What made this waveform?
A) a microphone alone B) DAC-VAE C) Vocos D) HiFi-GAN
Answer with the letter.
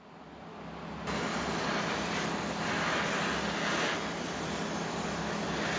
A